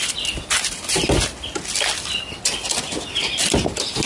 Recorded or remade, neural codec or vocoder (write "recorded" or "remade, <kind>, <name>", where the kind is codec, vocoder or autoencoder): recorded